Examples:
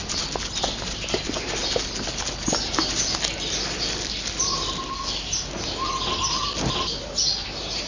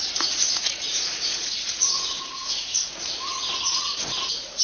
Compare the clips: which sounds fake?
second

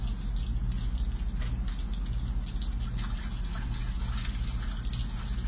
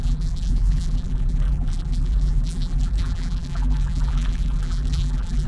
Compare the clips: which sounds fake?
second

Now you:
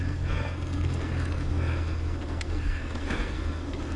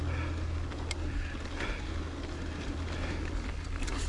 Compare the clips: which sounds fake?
first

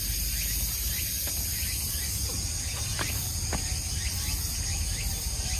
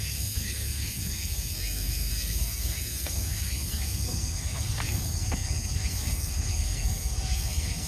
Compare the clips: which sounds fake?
second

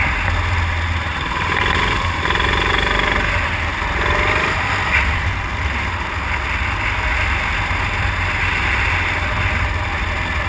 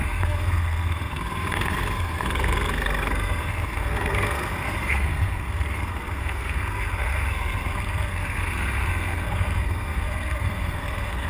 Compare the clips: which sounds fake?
second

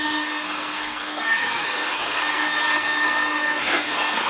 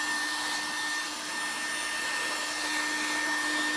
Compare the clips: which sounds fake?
first